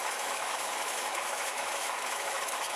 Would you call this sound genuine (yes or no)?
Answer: no